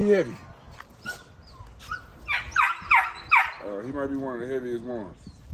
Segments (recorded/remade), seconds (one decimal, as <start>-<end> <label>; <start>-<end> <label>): 0.0-5.5 recorded